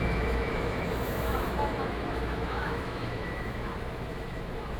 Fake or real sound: fake